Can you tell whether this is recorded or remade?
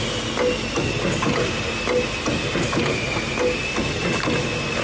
recorded